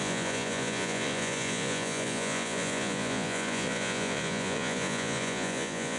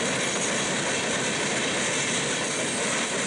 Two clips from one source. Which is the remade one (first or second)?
first